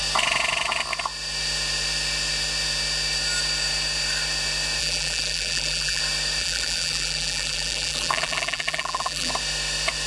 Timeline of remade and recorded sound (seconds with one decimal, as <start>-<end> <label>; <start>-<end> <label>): 0.0-4.8 recorded; 4.8-6.0 remade; 6.0-6.4 recorded; 6.4-9.3 remade; 9.3-10.1 recorded

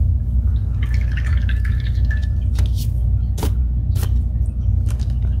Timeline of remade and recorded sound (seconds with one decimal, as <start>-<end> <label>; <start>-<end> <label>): 0.0-2.2 remade; 2.2-2.8 recorded; 2.8-3.6 remade; 3.6-4.7 recorded; 4.7-5.4 remade